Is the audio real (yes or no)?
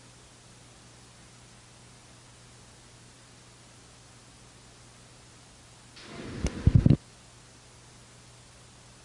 yes